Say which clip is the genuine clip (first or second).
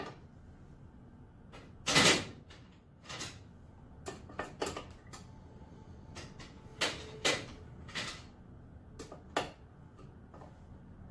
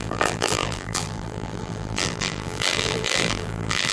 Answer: first